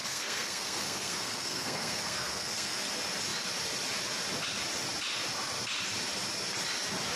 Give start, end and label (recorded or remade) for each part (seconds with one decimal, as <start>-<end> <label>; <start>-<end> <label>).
0.0-2.9 remade; 2.9-7.2 recorded